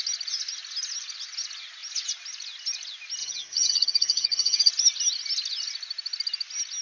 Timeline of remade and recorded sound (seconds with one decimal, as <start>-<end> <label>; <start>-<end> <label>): 0.0-3.2 recorded; 3.2-4.7 remade; 4.7-6.8 recorded